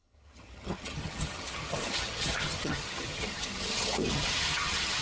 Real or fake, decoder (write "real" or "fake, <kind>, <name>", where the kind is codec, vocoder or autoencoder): fake, vocoder, HiFi-GAN